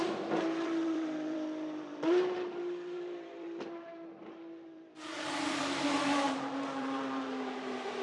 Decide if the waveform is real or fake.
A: fake